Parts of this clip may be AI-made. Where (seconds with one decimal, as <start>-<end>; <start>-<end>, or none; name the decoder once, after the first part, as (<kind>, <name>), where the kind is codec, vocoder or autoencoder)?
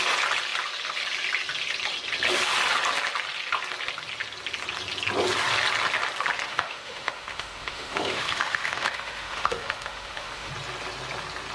6.5-10.5 (autoencoder, DAC-VAE)